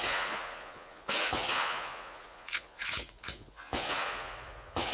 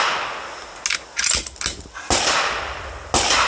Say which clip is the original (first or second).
second